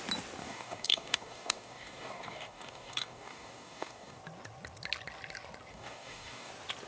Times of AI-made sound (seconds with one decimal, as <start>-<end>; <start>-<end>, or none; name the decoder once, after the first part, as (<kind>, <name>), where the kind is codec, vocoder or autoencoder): 0.4-4.2 (codec, DAC); 5.7-6.5